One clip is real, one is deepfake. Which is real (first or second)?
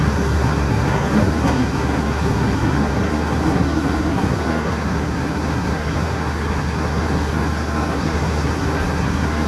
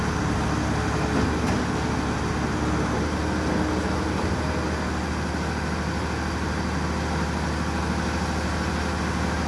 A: second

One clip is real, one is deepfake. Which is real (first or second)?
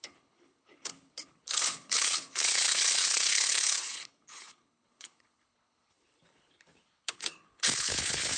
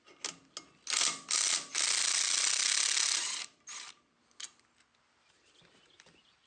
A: second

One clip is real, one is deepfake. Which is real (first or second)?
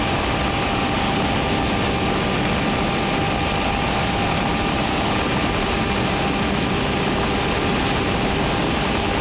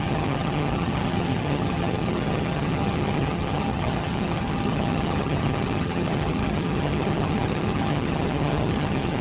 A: first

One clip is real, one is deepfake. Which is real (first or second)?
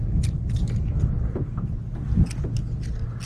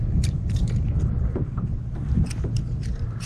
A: first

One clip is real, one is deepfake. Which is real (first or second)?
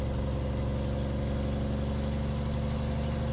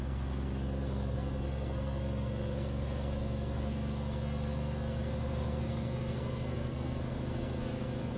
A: first